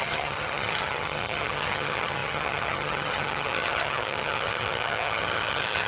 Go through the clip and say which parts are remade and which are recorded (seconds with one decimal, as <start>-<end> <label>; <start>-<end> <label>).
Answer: 0.0-5.9 remade